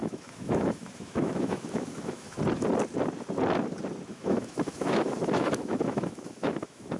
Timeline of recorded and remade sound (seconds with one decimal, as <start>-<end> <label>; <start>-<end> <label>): 0.0-2.4 remade; 2.4-4.1 recorded; 4.1-7.0 remade